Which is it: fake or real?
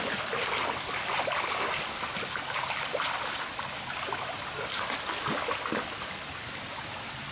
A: real